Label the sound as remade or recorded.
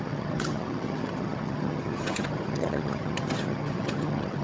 remade